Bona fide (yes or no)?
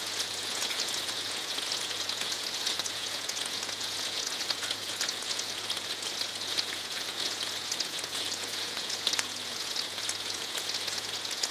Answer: no